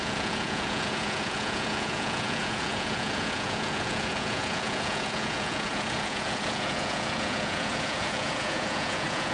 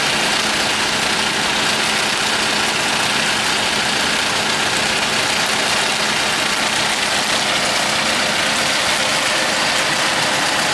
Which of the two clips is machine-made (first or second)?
first